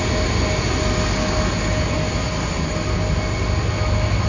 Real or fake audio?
real